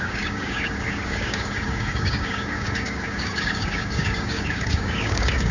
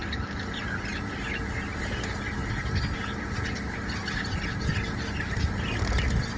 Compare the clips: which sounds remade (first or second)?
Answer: first